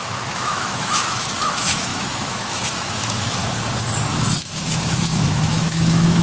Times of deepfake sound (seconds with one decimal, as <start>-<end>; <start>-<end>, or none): 0.0-3.4; 4.1-6.2